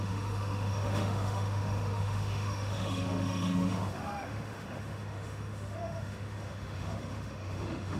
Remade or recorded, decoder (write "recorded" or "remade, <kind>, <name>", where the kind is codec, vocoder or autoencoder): remade, autoencoder, DAC-VAE